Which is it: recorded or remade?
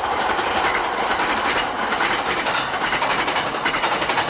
recorded